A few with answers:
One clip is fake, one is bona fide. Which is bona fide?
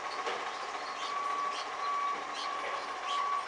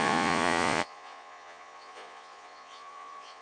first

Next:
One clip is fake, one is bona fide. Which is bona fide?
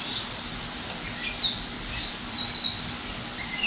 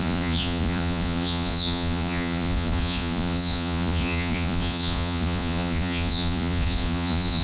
first